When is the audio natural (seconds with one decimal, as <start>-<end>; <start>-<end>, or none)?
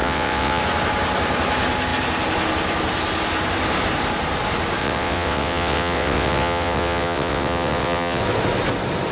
0.6-4.8; 8.2-9.1